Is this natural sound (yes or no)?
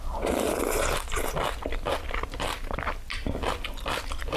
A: yes